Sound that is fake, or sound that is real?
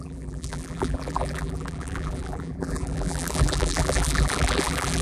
fake